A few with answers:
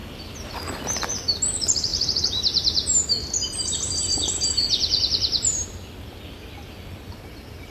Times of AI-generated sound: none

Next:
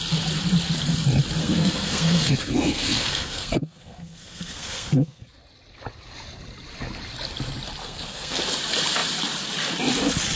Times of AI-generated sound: 1.4-5.2 (codec, SNAC); 7.8-8.4

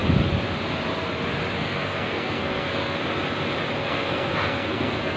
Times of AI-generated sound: 1.5-3.0 (codec, SNAC); 3.8-5.2

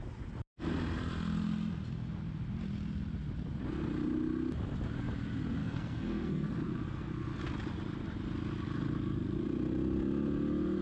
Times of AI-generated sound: 5.6-7.4 (codec, SNAC)